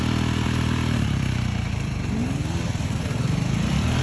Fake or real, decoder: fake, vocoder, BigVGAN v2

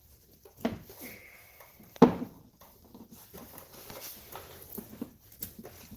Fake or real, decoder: fake, vocoder, BigVGAN v2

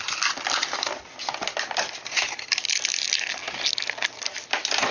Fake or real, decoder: fake, vocoder, BigVGAN v2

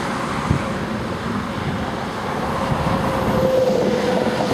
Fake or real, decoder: real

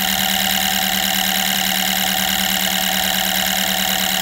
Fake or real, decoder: real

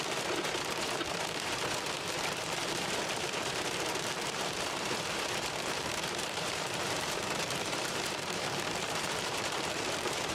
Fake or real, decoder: fake, vocoder, BigVGAN v2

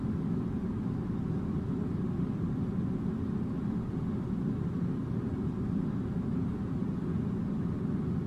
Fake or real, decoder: real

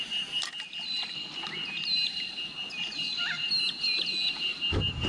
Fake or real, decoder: fake, vocoder, BigVGAN v2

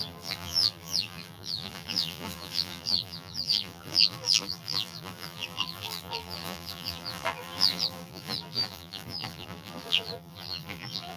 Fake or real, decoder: fake, vocoder, BigVGAN v2